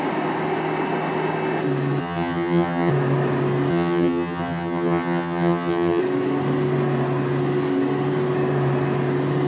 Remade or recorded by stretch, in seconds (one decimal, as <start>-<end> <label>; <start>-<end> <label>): 0.0-2.0 recorded; 2.0-2.9 remade; 2.9-3.7 recorded; 3.7-6.0 remade; 6.0-9.5 recorded